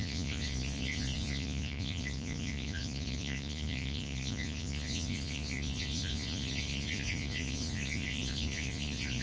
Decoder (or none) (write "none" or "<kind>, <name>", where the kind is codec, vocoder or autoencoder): vocoder, Vocos